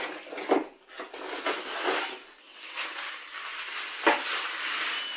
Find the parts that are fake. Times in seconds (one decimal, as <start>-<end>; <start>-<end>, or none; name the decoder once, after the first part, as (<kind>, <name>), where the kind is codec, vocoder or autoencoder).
none